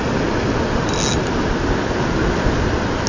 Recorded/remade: recorded